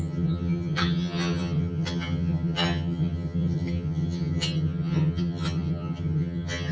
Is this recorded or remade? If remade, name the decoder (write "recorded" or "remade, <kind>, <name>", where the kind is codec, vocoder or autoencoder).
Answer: remade, vocoder, HiFi-GAN